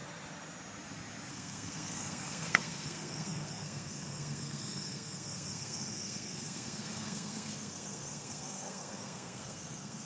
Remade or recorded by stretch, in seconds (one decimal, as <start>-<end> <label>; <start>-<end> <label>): 0.0-1.3 recorded; 1.3-10.1 remade